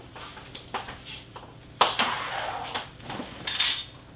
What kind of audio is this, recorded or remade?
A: recorded